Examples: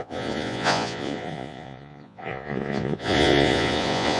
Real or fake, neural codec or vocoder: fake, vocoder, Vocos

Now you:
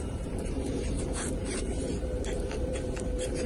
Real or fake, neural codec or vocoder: fake, vocoder, BigVGAN v2